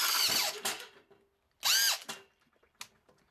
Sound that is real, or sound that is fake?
real